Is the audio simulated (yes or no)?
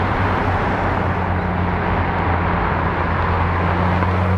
no